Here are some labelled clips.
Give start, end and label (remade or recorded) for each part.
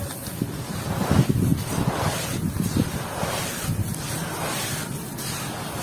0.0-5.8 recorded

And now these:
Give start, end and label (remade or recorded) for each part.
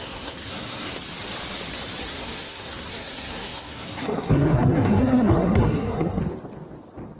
0.0-0.9 remade; 0.9-2.0 recorded; 2.0-6.2 remade; 6.2-7.2 recorded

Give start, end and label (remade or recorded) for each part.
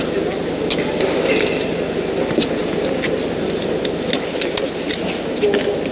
0.0-5.9 recorded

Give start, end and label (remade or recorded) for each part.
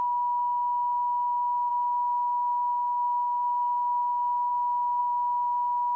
0.0-1.7 recorded; 1.7-4.5 remade; 4.5-6.0 recorded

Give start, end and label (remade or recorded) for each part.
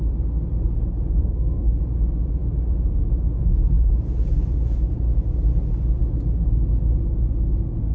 0.0-1.2 recorded; 1.2-1.8 remade; 1.8-7.9 recorded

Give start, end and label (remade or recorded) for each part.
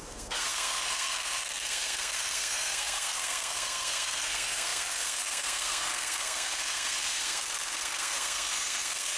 0.0-9.2 remade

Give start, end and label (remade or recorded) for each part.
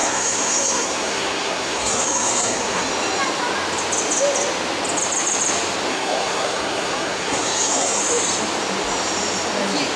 0.0-2.9 remade; 2.9-5.9 recorded; 5.9-8.0 remade; 8.0-10.0 recorded